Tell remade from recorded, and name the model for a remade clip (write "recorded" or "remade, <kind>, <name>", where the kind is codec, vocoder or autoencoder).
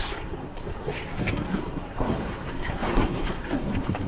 remade, codec, SNAC